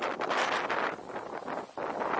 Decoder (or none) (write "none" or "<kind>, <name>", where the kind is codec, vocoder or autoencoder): none